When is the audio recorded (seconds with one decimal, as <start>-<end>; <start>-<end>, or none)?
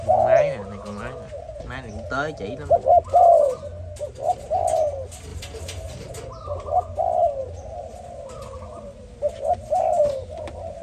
0.0-10.8